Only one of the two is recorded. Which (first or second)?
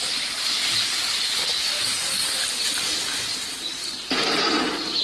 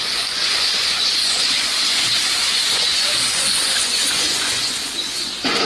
first